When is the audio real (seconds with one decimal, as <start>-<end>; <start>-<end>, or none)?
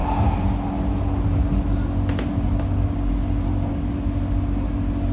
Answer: 0.0-5.1